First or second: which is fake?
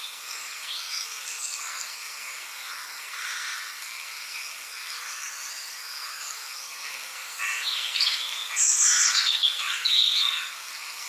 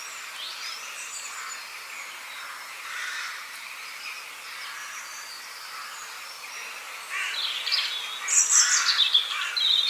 first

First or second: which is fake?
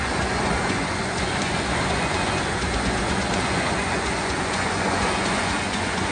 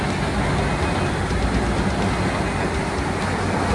first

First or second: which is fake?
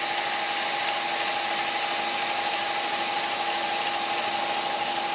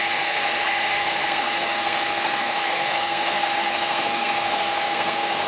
second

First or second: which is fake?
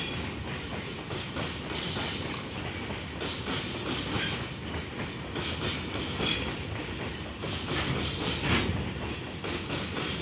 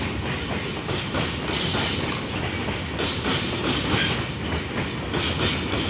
first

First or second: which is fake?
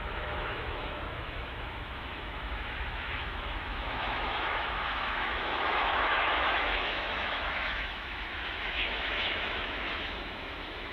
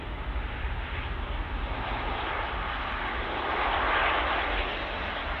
first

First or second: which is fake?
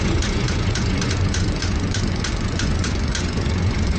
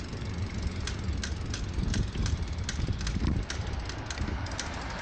first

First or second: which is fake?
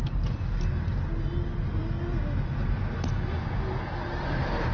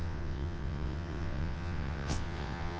second